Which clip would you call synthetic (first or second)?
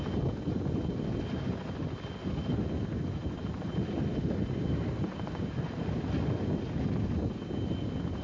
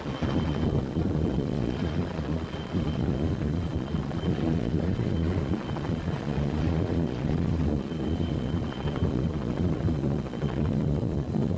second